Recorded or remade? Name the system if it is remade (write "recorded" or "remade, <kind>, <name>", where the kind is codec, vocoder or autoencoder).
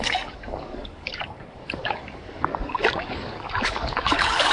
remade, codec, DAC